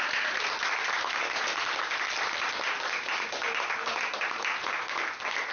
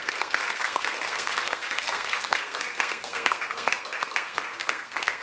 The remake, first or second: second